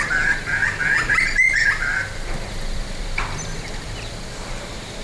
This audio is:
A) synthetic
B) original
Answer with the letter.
B